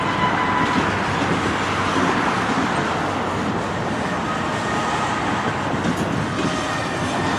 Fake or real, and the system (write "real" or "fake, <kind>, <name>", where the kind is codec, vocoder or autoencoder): real